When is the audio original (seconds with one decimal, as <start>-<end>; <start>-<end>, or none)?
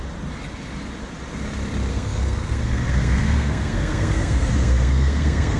0.0-1.9